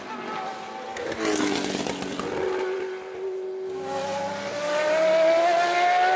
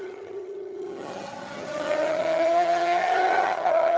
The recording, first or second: first